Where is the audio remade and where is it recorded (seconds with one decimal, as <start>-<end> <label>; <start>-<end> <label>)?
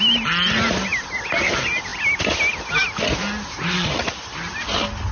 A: 0.0-5.1 recorded